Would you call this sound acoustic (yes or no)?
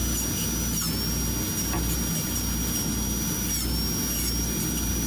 yes